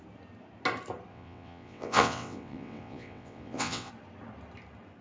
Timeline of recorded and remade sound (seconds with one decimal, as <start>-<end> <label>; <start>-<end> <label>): 0.0-1.1 recorded; 1.1-3.9 remade; 3.9-5.0 recorded